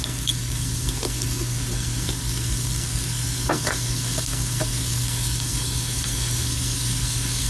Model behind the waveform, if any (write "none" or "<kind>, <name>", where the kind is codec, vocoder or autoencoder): codec, SNAC